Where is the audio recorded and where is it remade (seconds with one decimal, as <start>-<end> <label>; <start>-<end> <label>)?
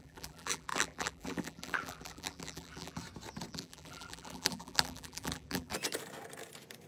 0.0-3.0 remade; 3.0-3.5 recorded; 3.5-5.7 remade; 5.7-6.9 recorded